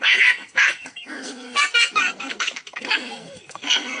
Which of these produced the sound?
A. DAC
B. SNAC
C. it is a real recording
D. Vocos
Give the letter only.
B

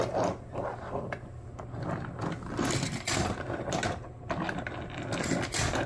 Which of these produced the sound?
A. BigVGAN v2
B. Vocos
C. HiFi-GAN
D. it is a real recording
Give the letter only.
D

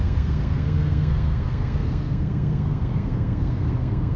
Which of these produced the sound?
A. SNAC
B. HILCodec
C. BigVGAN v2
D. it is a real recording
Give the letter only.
A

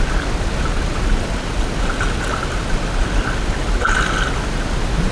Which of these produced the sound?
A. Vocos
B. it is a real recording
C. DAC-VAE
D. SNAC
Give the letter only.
B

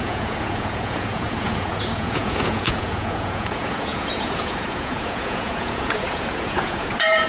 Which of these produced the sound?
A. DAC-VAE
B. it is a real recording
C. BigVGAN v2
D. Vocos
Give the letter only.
D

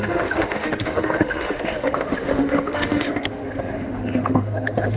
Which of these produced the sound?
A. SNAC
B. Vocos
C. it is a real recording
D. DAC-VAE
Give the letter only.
D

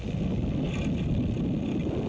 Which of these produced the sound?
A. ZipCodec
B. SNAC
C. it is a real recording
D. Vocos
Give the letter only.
C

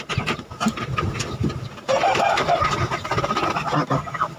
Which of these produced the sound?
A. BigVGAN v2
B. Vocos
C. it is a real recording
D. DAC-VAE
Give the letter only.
C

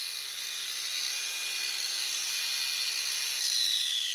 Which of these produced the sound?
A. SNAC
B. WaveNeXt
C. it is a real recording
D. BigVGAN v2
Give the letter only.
C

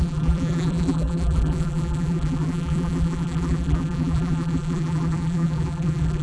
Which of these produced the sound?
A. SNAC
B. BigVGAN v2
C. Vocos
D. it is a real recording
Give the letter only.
B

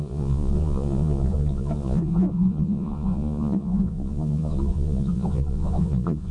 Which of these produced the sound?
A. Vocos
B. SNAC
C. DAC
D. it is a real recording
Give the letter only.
A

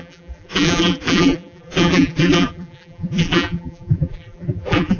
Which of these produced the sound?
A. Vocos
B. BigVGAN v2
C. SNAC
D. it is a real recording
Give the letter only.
B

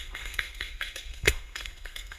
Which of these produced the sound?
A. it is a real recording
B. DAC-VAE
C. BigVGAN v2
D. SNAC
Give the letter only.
D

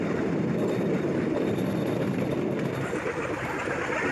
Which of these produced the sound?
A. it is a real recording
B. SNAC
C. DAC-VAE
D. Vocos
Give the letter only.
A